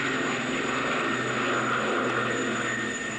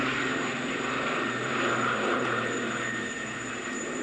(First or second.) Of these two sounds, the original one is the first